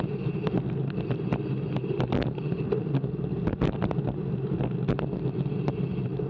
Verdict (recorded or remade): recorded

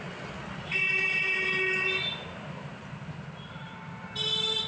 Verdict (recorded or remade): recorded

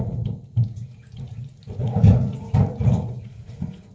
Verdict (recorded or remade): remade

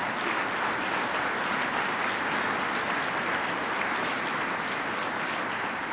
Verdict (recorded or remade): recorded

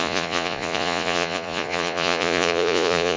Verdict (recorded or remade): remade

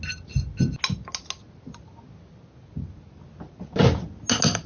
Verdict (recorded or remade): recorded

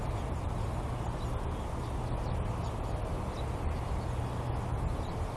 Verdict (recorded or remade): recorded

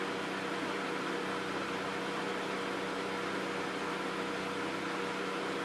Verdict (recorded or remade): recorded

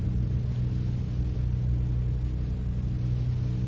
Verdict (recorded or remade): recorded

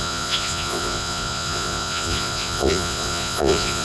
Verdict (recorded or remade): remade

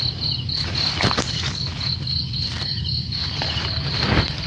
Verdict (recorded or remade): recorded